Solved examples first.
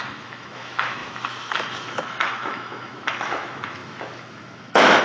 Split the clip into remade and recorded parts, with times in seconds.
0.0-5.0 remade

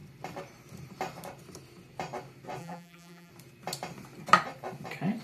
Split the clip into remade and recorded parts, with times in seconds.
0.0-2.6 recorded; 2.6-3.3 remade; 3.3-5.2 recorded